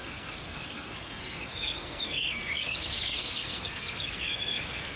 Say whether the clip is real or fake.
fake